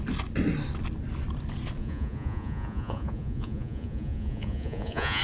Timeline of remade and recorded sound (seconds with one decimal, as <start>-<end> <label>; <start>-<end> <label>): 0.0-1.8 recorded; 1.8-5.2 remade